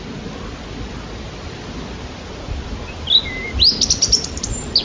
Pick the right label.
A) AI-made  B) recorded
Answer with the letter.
B